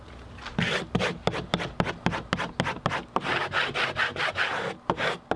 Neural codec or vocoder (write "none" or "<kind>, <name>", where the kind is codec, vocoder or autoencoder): none